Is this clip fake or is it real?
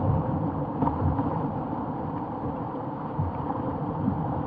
fake